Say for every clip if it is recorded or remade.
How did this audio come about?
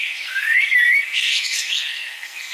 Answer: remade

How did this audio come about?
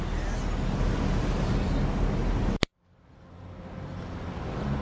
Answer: recorded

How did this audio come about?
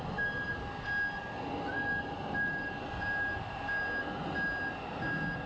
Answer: recorded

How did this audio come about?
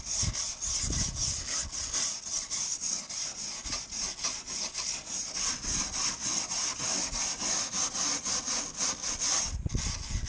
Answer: recorded